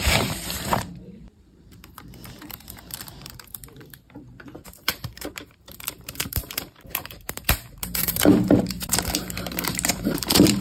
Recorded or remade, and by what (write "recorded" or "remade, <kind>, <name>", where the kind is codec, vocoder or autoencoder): remade, vocoder, BigVGAN v2